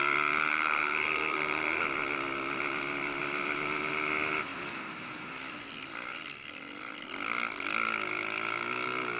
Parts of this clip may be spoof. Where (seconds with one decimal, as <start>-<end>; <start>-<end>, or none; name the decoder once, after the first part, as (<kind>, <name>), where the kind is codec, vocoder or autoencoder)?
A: 0.5-1.8 (codec, SNAC)